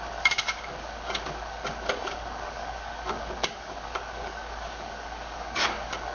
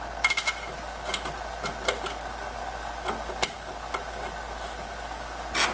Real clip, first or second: second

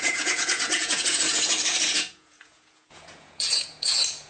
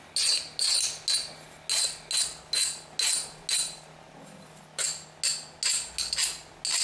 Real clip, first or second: second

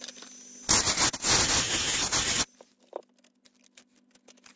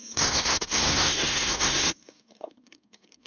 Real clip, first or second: first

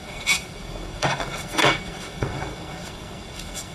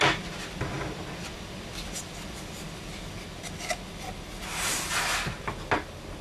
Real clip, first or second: second